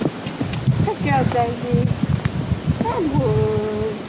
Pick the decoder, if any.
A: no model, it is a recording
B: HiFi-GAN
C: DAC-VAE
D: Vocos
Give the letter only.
A